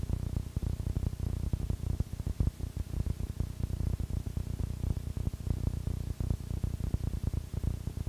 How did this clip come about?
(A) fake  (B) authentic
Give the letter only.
B